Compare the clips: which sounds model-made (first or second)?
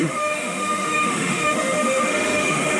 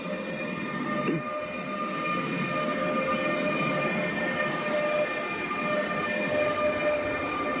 first